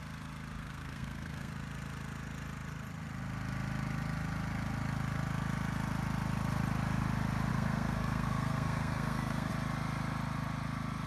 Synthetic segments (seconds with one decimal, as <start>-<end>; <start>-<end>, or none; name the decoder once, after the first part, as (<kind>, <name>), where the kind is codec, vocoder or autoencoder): 0.6-1.5 (codec, SNAC); 7.5-9.5